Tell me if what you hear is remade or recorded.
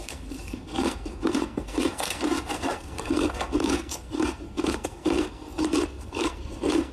remade